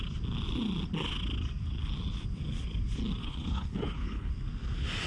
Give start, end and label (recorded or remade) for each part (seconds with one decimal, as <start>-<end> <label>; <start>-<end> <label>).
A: 0.0-3.2 recorded; 3.2-4.3 remade; 4.3-5.1 recorded